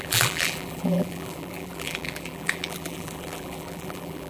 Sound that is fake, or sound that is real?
fake